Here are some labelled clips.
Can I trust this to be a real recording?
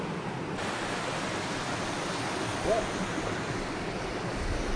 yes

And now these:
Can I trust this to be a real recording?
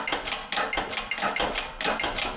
yes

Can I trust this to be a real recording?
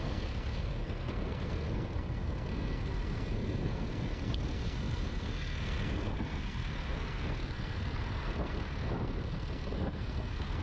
no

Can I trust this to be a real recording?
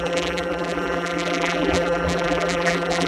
no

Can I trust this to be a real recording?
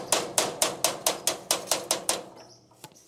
yes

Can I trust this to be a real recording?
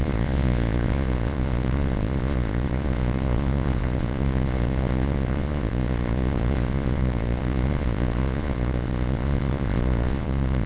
no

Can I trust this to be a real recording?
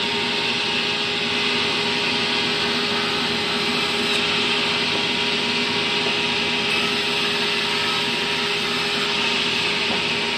yes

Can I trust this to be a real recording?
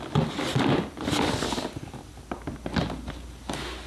yes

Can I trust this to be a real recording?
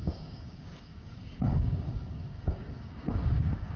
no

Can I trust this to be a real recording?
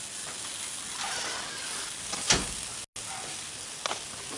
yes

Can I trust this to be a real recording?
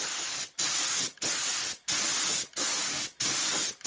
yes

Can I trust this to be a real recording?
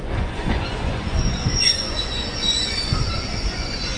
no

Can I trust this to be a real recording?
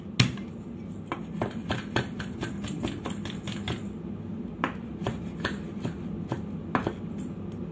yes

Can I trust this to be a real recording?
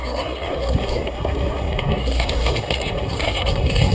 no